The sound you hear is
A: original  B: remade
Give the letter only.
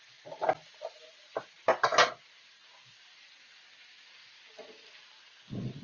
A